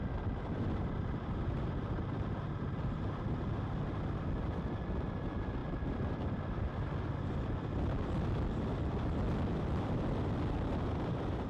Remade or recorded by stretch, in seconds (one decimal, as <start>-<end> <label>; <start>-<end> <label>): 0.0-11.5 recorded